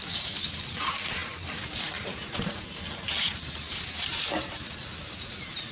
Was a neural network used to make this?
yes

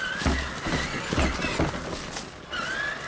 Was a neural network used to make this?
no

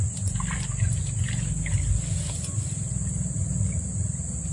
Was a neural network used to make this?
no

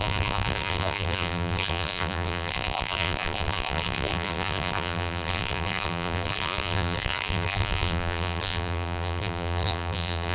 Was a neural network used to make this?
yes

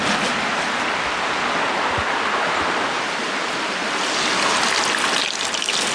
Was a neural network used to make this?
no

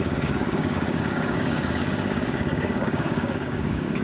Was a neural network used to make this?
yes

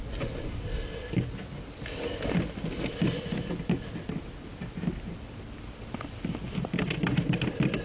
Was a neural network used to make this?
no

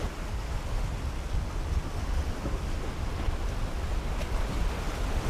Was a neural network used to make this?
no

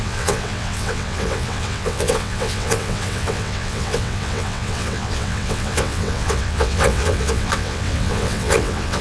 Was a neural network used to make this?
yes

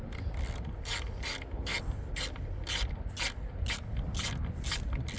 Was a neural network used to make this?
no